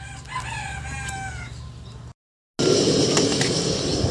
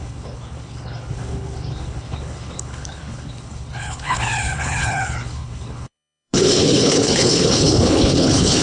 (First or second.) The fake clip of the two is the second